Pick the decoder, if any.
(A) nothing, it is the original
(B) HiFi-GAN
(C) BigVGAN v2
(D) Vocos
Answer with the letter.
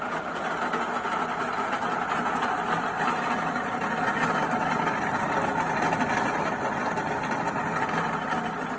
A